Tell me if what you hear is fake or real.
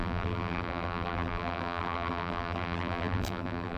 fake